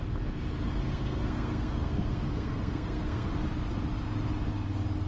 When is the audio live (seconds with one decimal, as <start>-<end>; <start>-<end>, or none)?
0.0-0.8; 3.3-5.1

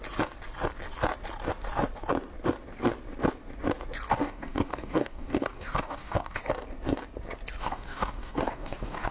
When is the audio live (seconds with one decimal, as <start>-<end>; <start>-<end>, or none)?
0.0-4.2; 6.4-7.6

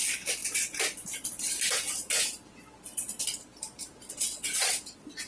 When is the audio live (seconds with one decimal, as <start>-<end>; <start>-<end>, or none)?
0.0-4.1

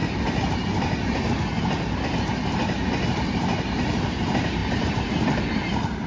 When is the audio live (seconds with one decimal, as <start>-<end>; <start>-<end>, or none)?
0.0-3.7

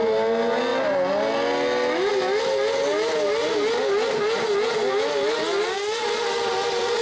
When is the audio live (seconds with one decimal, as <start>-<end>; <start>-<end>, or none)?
0.0-7.0